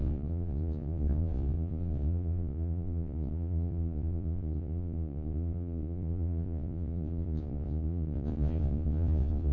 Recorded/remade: remade